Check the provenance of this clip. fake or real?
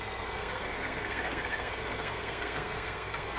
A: fake